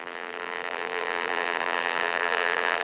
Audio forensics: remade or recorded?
remade